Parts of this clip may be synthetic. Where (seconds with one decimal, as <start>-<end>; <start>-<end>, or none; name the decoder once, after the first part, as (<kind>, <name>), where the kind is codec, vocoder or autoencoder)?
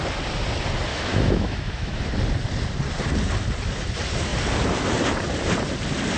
0.9-2.0 (autoencoder, DAC-VAE)